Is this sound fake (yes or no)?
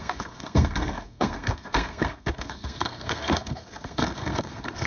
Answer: yes